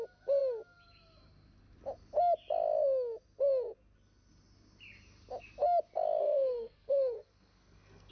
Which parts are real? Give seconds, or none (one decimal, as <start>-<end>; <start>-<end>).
0.0-6.2